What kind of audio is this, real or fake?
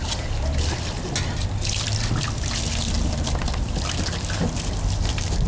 real